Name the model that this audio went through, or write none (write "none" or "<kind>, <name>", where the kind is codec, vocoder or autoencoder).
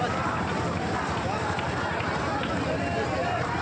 vocoder, BigVGAN v2